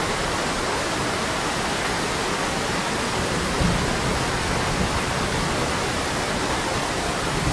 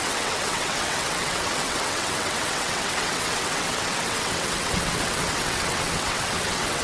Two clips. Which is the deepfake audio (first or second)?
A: second